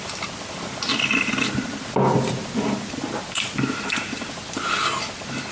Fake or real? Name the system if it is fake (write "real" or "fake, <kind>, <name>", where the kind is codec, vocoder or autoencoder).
real